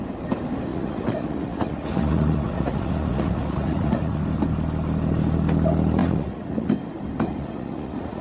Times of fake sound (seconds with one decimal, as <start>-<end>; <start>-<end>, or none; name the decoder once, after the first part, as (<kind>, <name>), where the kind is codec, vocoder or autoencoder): 0.7-4.2 (vocoder, Vocos); 6.0-6.7; 7.3-8.2